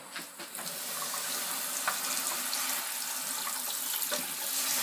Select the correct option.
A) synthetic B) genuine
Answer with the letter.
B